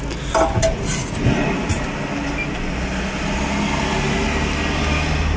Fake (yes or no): no